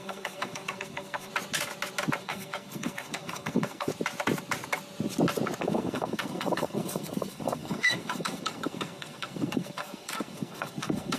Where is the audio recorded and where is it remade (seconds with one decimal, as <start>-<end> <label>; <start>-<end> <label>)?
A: 0.0-1.3 remade; 1.3-2.2 recorded; 2.2-3.9 remade; 3.9-5.6 recorded; 5.6-11.2 remade